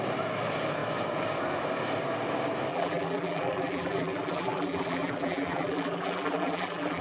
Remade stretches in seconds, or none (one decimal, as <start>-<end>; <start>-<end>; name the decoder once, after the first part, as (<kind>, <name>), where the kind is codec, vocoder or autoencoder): 2.7-7.0 (vocoder, BigVGAN v2)